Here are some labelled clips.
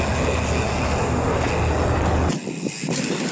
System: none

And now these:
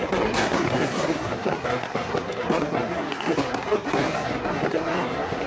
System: codec, SNAC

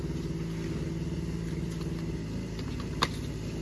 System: none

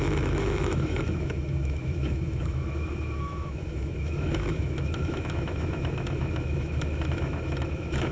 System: autoencoder, DAC-VAE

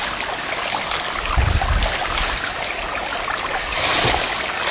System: none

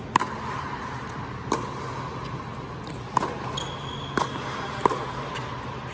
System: none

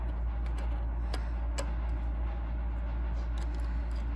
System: none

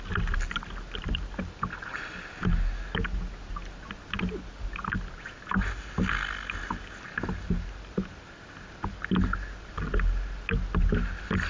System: none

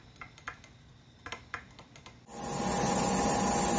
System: none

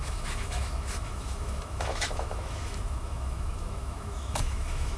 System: autoencoder, DAC-VAE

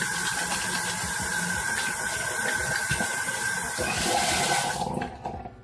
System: none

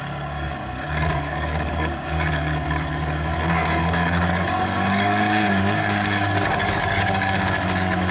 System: codec, DAC